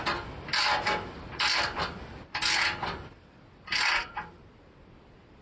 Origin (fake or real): real